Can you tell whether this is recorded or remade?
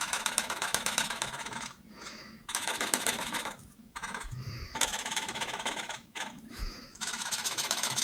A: remade